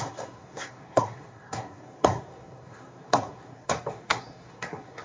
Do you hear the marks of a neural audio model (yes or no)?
yes